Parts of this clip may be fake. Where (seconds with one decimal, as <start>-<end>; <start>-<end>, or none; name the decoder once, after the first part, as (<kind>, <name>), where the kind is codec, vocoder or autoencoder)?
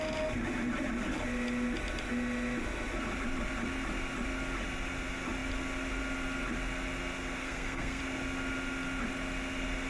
7.4-8.0 (codec, SNAC)